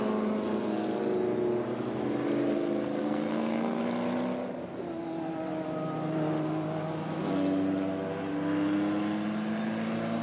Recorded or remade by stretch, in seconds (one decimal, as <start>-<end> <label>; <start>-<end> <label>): 0.0-3.0 recorded; 3.0-3.8 remade; 3.8-10.2 recorded